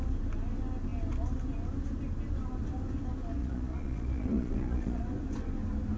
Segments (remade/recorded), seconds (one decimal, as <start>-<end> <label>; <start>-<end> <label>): 0.0-3.4 recorded; 3.4-5.0 remade; 5.0-6.0 recorded